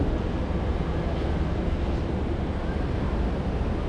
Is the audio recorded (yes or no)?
yes